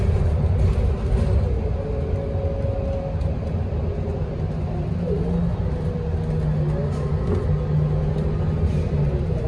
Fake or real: real